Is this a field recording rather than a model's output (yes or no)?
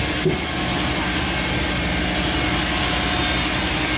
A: yes